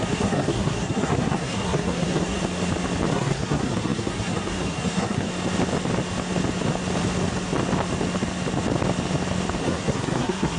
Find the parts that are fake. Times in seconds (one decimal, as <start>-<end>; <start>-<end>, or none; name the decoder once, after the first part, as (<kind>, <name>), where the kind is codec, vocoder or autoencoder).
0.0-2.4 (codec, SNAC); 3.1-5.3; 9.6-10.6